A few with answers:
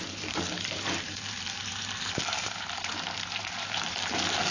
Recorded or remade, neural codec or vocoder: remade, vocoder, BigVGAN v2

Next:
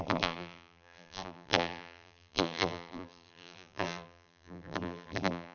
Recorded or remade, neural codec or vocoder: remade, vocoder, BigVGAN v2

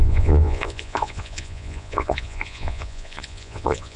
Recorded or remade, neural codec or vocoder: remade, vocoder, Vocos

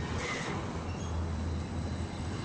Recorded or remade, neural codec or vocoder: recorded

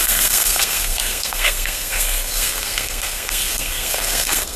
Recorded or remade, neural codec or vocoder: remade, codec, SNAC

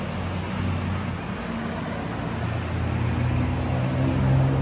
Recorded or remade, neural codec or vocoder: recorded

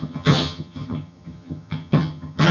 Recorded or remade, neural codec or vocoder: remade, vocoder, HiFi-GAN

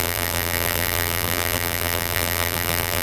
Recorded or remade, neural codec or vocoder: remade, vocoder, BigVGAN v2